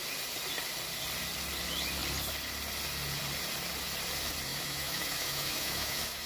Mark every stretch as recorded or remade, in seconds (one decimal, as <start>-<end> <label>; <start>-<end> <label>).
0.0-4.5 recorded; 4.5-6.3 remade